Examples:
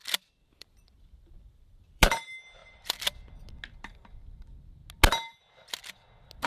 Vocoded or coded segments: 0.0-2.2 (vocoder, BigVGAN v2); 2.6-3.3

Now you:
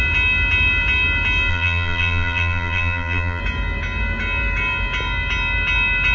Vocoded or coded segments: 1.5-3.4 (vocoder, BigVGAN v2)